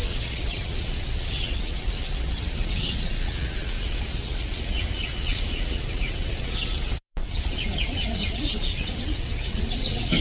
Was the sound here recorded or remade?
remade